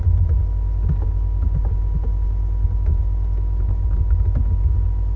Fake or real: real